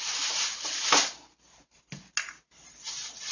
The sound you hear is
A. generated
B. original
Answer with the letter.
B